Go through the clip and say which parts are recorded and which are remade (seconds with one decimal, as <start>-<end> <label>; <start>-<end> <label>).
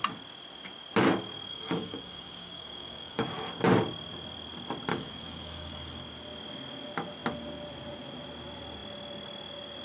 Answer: 0.0-1.5 recorded; 1.5-3.5 remade; 3.5-4.9 recorded; 4.9-6.0 remade; 6.0-9.8 recorded